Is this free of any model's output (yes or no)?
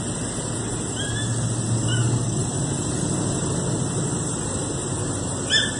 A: yes